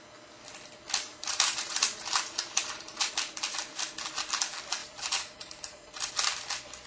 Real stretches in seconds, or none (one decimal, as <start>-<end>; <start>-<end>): 0.0-1.1; 3.1-4.8; 6.1-6.9